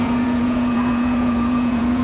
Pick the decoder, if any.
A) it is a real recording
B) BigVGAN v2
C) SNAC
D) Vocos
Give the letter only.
D